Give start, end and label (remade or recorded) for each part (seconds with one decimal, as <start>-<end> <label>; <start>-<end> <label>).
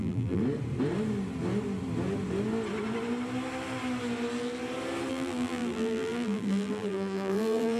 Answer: 0.0-0.4 remade; 0.4-5.1 recorded; 5.1-7.8 remade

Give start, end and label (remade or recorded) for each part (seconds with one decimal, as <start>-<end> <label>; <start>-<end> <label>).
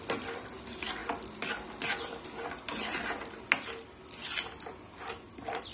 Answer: 0.0-5.7 recorded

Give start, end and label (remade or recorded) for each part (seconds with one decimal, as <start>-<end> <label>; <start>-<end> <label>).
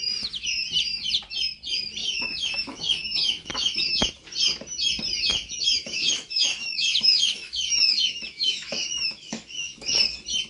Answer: 0.0-2.0 recorded; 2.0-4.1 remade; 4.1-5.3 recorded; 5.3-10.0 remade; 10.0-10.5 recorded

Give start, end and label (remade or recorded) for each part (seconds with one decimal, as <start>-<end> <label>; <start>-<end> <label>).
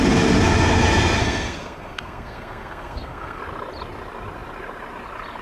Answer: 0.0-1.2 recorded; 1.2-3.4 remade; 3.4-5.4 recorded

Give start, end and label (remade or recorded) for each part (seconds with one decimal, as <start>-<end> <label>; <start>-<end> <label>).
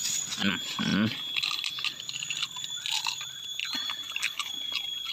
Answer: 0.0-5.1 recorded